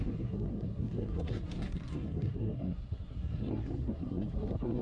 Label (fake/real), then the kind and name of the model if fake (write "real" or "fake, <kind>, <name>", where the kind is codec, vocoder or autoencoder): fake, codec, SNAC